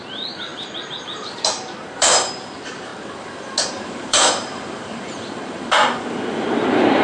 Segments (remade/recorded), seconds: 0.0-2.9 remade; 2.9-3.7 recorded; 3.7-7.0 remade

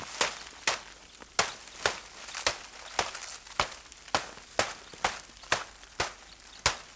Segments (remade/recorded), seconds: 0.0-7.0 recorded

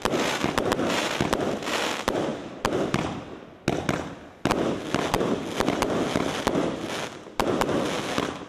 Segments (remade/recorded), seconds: 0.0-8.5 recorded

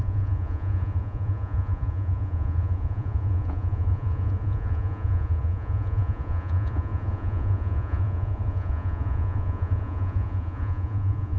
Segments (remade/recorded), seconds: 0.0-11.4 remade

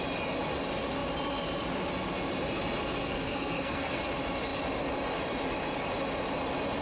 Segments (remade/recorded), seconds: 0.0-3.0 recorded; 3.0-4.0 remade; 4.0-6.8 recorded

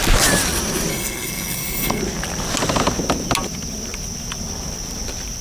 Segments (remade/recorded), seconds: 0.0-0.9 recorded; 0.9-2.0 remade; 2.0-5.4 recorded